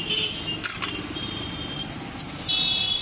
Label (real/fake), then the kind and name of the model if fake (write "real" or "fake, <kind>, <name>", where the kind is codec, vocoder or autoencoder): real